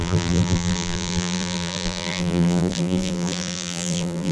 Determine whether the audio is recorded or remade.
remade